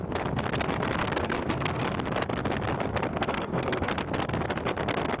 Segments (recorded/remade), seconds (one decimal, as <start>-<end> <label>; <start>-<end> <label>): 0.0-1.0 recorded; 1.0-1.8 remade; 1.8-3.1 recorded; 3.1-3.9 remade; 3.9-5.2 recorded